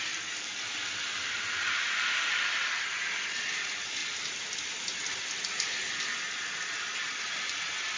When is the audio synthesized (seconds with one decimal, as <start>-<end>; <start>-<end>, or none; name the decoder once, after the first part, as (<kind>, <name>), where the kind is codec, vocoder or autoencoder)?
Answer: none